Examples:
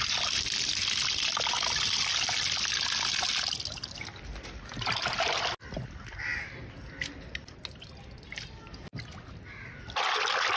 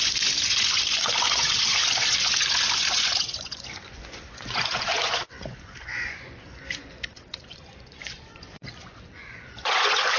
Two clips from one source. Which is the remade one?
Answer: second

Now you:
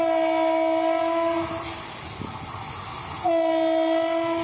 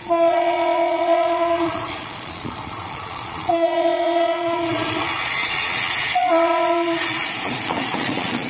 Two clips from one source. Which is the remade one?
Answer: second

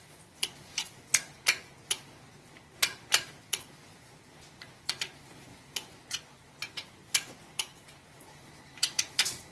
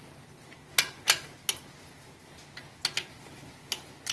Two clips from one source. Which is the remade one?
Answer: first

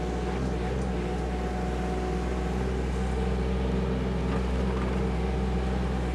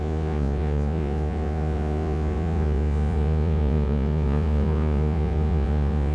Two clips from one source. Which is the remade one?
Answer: second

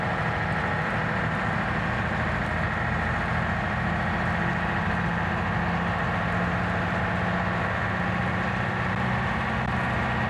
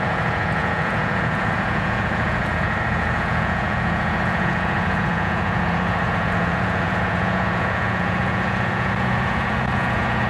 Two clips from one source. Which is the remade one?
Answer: second